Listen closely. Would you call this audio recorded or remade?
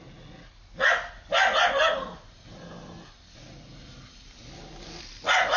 recorded